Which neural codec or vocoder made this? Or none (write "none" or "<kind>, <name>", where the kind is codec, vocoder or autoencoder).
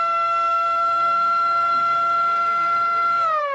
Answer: codec, SNAC